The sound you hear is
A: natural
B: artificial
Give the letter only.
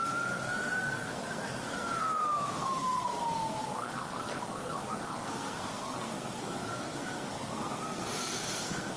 B